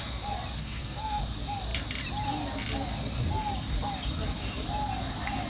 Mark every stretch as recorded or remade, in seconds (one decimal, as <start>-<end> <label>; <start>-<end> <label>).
0.0-0.6 recorded; 0.6-1.2 remade; 1.2-5.5 recorded